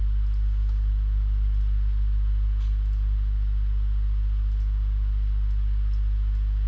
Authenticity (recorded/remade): recorded